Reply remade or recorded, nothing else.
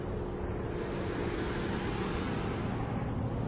recorded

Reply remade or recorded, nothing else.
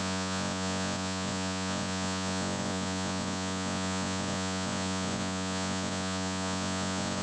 remade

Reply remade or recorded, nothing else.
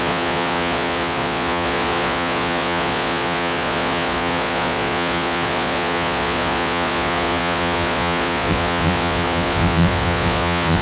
remade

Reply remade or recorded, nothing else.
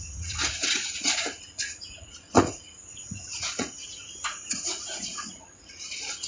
remade